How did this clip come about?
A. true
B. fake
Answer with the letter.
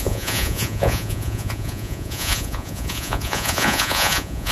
B